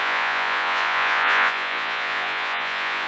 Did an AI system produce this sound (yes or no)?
yes